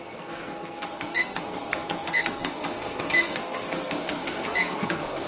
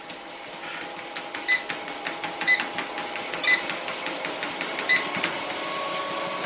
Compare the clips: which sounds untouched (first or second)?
second